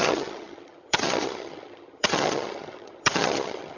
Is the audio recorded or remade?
remade